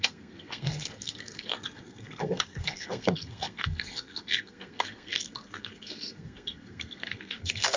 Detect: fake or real fake